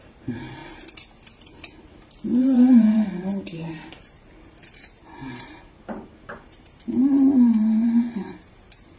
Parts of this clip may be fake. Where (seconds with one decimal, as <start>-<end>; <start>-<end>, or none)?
0.0-0.6; 1.8-3.3; 3.9-4.6; 5.4-9.0